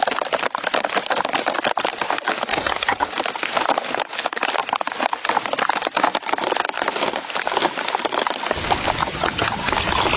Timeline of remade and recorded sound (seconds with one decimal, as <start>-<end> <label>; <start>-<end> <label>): 0.0-2.5 recorded; 2.5-3.1 remade; 3.1-9.0 recorded; 9.0-9.7 remade; 9.7-10.2 recorded